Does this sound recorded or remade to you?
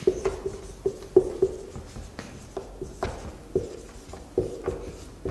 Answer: recorded